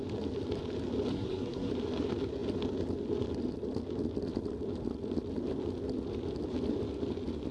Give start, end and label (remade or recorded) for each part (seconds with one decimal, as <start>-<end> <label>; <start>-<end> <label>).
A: 0.0-1.1 recorded; 1.1-1.7 remade; 1.7-7.5 recorded